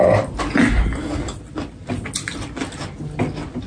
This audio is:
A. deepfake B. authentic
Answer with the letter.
B